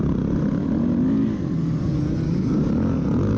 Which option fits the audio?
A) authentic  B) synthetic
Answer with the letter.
A